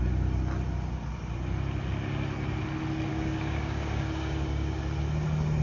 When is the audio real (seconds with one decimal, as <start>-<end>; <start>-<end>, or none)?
0.0-3.1; 4.8-5.6

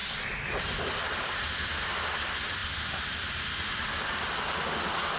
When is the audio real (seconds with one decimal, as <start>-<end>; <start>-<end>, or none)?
0.0-5.2

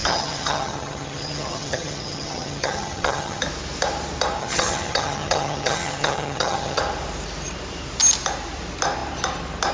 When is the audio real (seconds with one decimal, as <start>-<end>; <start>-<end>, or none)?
3.4-4.4; 6.8-9.7

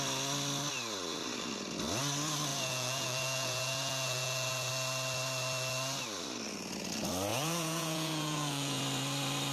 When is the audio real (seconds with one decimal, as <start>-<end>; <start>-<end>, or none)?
0.0-2.5; 4.7-7.3; 8.8-9.5